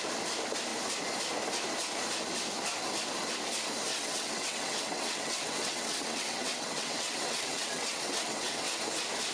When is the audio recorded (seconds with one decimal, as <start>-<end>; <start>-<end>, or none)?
0.0-3.9; 8.8-9.3